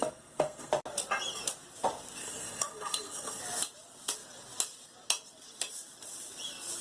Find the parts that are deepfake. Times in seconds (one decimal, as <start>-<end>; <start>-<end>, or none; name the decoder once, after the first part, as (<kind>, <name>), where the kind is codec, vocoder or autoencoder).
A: 0.0-0.7 (codec, SNAC); 2.2-3.4